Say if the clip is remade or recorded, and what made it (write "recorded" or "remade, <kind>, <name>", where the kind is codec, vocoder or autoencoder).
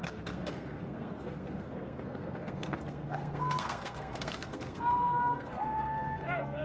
remade, codec, SNAC